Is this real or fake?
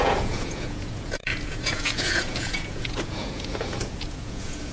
fake